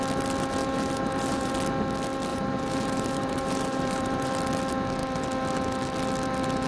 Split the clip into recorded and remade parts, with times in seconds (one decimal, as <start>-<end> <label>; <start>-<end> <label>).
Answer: 0.0-0.6 recorded; 0.6-1.5 remade; 1.5-2.3 recorded; 2.3-4.3 remade; 4.3-6.7 recorded